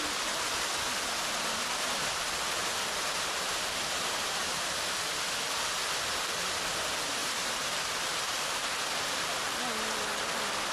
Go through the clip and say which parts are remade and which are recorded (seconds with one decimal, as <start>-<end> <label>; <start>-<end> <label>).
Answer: 0.0-2.6 recorded; 2.6-4.7 remade; 4.7-7.2 recorded; 7.2-8.7 remade; 8.7-10.7 recorded